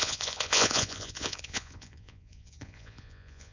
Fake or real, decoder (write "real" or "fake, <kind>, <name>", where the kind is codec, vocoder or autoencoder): fake, vocoder, Vocos